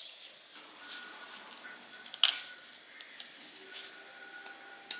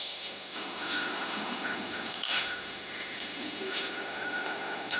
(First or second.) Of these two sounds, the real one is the first